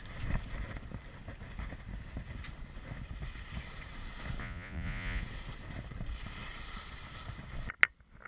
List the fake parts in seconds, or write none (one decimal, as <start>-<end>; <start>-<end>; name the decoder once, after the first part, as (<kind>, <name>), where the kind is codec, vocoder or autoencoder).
4.4-5.2 (vocoder, Vocos)